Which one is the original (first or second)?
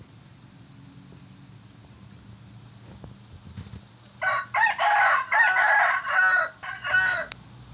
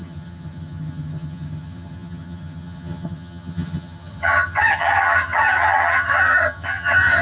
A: first